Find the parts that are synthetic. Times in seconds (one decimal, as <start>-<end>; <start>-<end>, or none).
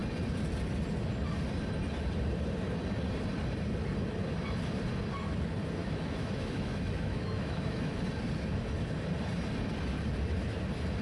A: 5.8-8.0